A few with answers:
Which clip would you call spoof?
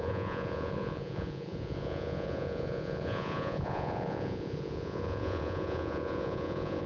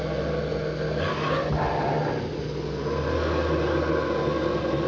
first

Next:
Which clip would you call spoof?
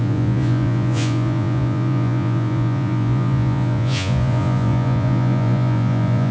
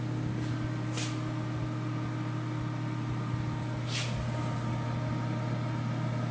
first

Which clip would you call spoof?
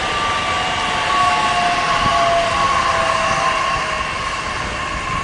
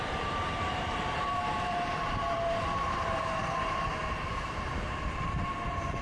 second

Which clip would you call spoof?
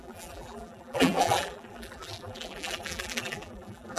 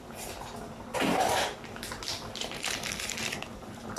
first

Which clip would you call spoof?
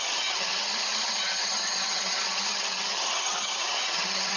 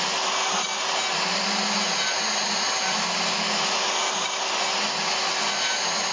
first